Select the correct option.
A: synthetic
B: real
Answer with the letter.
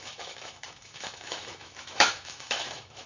A